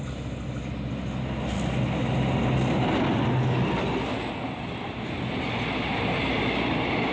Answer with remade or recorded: recorded